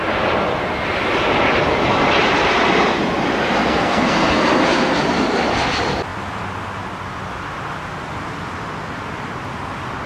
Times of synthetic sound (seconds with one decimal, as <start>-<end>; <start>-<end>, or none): 3.6-4.4